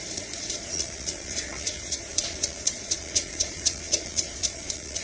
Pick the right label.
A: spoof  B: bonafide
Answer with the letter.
A